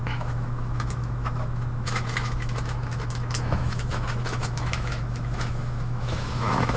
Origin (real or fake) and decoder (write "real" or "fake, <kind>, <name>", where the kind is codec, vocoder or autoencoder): fake, autoencoder, DAC-VAE